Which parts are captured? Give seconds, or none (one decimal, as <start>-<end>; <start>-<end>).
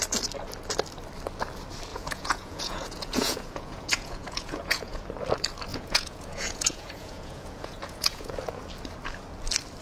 0.0-1.9; 5.0-5.7; 8.5-9.8